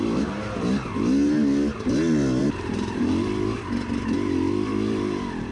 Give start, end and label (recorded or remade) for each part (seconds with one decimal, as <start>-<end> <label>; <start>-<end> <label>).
0.0-2.4 recorded; 2.4-3.1 remade; 3.1-5.5 recorded